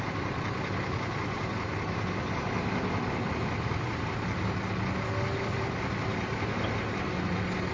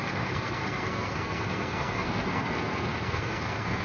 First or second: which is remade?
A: second